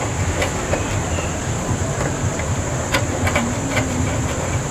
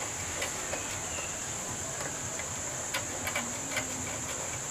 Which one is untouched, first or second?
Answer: second